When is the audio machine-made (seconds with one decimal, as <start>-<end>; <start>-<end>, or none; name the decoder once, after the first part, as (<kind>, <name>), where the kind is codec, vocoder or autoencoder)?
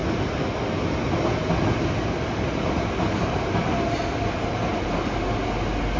none